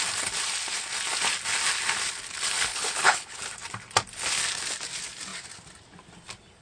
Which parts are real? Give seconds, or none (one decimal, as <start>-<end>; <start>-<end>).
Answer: 0.0-2.7; 3.4-6.6